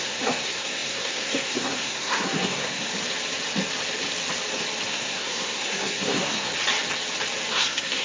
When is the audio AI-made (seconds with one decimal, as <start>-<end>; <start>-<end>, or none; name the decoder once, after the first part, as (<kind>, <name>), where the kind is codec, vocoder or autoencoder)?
0.0-2.9 (codec, SNAC); 4.9-6.5; 7.5-8.0